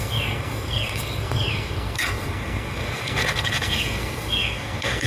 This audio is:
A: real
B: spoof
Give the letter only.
B